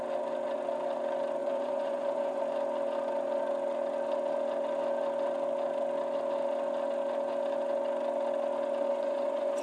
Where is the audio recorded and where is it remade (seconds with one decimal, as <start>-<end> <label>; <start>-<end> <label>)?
0.0-1.4 recorded; 1.4-2.4 remade; 2.4-8.9 recorded; 8.9-9.6 remade